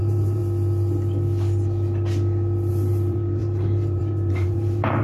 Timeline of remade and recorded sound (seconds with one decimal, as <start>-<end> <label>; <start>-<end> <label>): 0.0-0.4 remade; 0.4-2.7 recorded; 2.7-5.0 remade